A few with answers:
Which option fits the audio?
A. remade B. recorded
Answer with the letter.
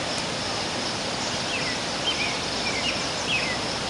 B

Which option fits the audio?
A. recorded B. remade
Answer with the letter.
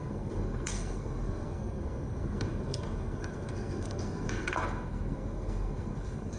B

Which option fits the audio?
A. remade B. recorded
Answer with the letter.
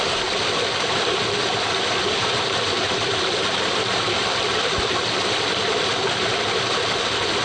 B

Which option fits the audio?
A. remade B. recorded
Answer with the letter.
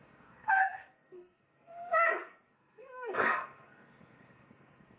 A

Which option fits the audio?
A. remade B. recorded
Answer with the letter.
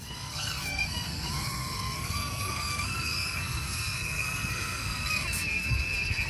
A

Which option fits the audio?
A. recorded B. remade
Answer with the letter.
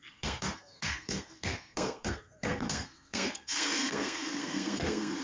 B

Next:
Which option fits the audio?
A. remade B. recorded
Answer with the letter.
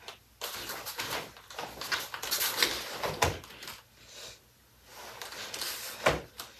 B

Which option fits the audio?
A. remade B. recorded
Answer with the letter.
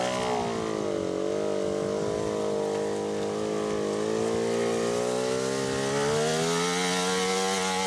B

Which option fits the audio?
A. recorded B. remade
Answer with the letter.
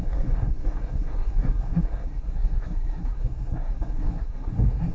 B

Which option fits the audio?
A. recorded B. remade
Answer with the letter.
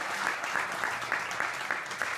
A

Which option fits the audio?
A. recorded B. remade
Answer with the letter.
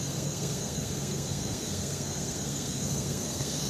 B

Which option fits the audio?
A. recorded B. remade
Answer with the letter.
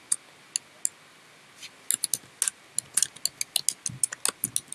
A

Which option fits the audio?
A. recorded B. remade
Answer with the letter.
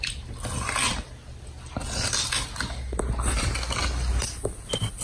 A